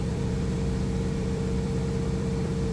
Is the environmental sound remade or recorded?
remade